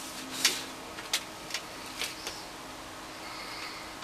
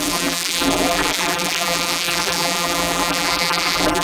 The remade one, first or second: second